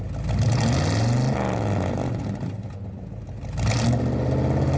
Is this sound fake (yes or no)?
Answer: no